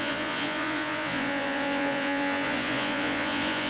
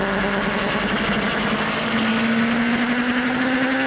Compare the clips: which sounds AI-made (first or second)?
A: first